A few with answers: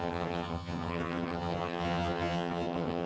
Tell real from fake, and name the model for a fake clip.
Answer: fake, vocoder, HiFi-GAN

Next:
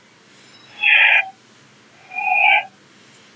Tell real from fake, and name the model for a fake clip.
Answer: real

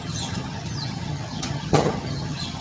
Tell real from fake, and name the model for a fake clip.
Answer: fake, vocoder, HiFi-GAN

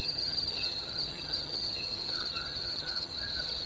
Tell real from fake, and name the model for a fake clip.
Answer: fake, vocoder, HiFi-GAN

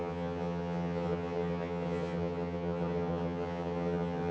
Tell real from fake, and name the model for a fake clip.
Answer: fake, vocoder, HiFi-GAN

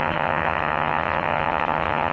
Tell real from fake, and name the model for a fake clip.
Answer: fake, vocoder, HiFi-GAN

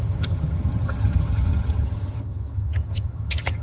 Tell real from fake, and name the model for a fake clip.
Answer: fake, vocoder, HiFi-GAN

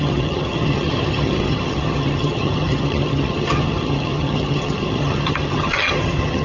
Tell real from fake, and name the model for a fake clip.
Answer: fake, vocoder, HiFi-GAN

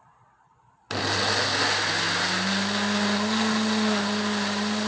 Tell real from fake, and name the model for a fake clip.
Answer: real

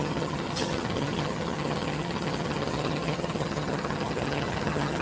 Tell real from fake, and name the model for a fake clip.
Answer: fake, vocoder, HiFi-GAN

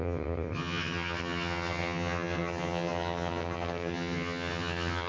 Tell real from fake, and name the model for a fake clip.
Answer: fake, vocoder, HiFi-GAN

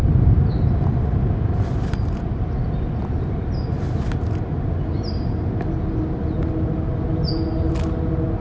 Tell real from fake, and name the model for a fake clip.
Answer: real